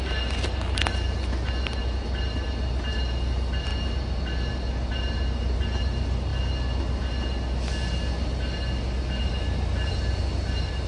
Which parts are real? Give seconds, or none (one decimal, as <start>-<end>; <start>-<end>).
0.0-10.9